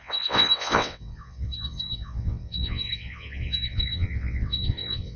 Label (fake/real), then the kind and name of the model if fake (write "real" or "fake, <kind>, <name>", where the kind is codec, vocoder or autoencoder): fake, vocoder, WaveNeXt